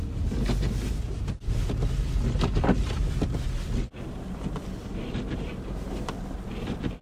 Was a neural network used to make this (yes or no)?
no